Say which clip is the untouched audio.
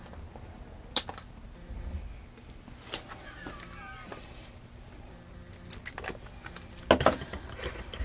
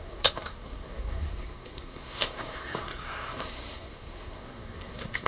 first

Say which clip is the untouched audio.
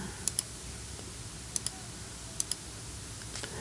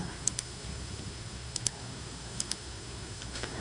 first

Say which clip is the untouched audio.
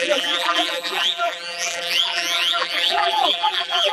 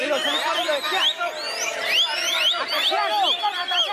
second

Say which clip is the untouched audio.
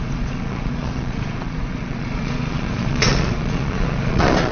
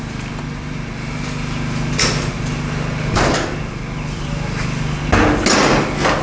second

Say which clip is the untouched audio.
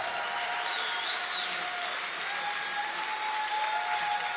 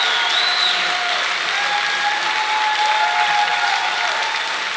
first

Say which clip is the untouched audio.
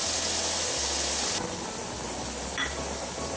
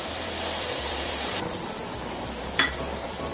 first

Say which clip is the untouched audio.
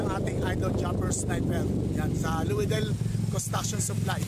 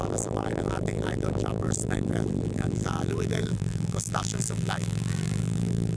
first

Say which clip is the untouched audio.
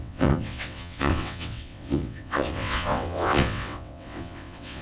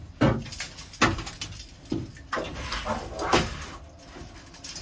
second